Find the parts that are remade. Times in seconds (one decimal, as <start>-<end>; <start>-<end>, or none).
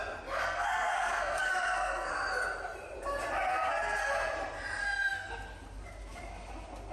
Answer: 0.4-2.1; 3.5-4.1; 4.8-5.3